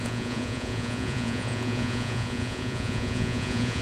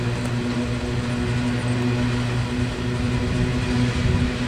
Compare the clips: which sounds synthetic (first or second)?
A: first